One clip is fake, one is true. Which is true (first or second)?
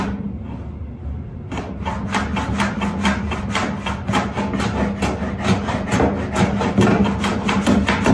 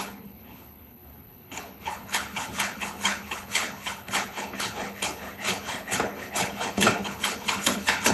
first